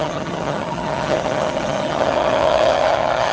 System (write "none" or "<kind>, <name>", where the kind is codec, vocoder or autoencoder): vocoder, HiFi-GAN